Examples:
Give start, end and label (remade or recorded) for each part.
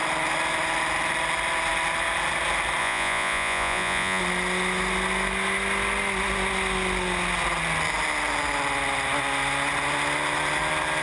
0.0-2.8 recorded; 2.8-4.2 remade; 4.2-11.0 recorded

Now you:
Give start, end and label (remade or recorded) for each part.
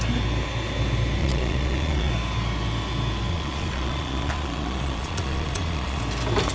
0.0-1.2 recorded; 1.2-2.1 remade; 2.1-3.3 recorded; 3.3-6.0 remade; 6.0-6.5 recorded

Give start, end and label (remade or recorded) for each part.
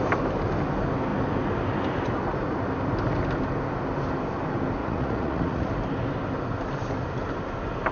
0.0-4.8 recorded; 4.8-5.7 remade; 5.7-7.9 recorded